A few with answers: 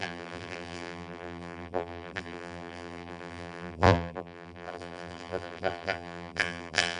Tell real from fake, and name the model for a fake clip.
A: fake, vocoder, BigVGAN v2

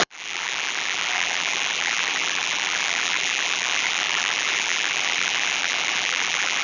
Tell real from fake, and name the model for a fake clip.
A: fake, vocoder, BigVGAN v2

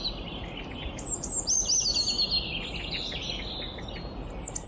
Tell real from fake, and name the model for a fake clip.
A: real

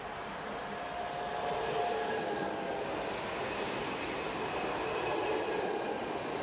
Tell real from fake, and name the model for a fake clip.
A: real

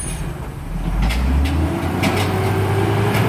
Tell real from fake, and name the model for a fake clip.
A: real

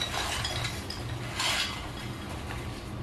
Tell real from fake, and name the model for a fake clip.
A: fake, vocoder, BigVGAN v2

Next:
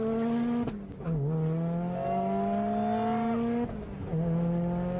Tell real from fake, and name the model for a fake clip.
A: real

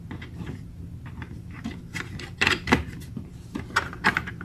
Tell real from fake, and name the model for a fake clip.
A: fake, vocoder, BigVGAN v2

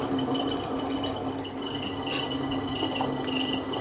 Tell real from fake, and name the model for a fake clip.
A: real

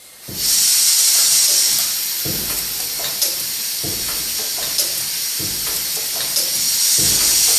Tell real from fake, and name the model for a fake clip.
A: real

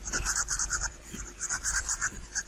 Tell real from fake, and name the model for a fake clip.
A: fake, vocoder, BigVGAN v2